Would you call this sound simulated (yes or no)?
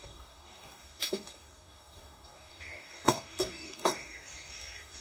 yes